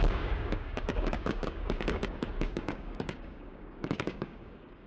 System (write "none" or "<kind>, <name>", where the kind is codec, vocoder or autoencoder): codec, DAC